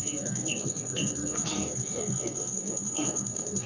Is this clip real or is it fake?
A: fake